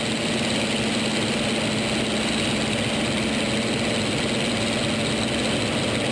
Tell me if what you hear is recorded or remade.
recorded